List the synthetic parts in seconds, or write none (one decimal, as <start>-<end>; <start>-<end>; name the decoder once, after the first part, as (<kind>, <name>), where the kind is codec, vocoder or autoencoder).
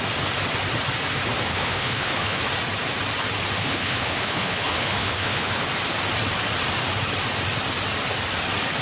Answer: 1.5-2.4 (codec, HILCodec); 3.6-5.7